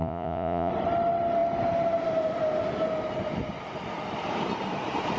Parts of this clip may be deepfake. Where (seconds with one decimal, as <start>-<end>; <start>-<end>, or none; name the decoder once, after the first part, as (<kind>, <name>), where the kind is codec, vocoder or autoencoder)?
0.0-0.7 (vocoder, Vocos)